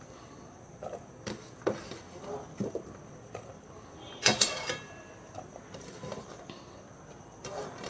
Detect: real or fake fake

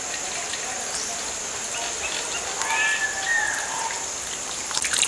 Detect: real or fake real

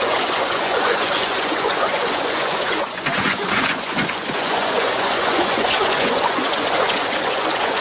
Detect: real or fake fake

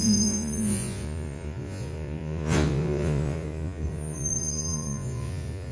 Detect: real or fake fake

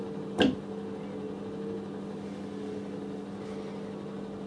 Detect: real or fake real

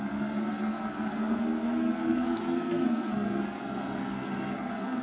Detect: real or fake fake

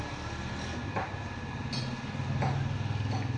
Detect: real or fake real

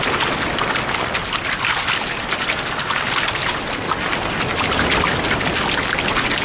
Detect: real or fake real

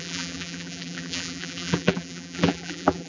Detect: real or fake fake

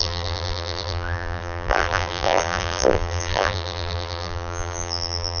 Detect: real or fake fake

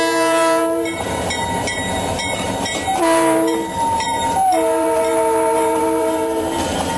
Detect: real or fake fake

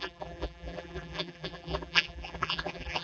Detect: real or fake fake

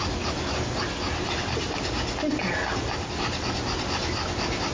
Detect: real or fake real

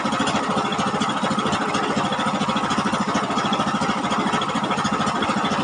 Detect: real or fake real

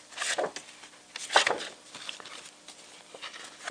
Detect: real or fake real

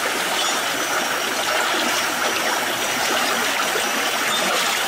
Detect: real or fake real